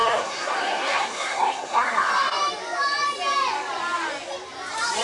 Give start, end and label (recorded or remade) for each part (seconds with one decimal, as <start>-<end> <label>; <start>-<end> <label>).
0.0-2.1 remade; 2.1-5.0 recorded